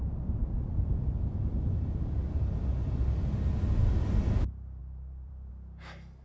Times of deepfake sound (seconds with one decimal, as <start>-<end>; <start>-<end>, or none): 4.8-5.5